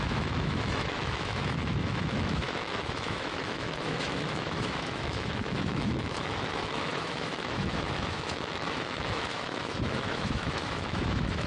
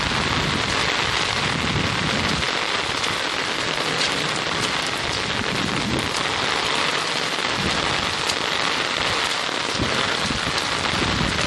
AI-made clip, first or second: first